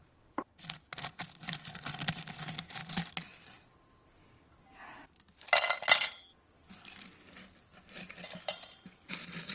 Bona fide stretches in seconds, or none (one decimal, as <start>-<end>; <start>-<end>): 0.0-8.5